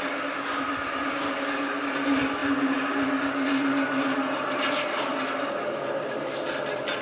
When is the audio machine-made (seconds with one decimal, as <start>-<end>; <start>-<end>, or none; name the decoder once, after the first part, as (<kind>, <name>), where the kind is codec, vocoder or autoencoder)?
none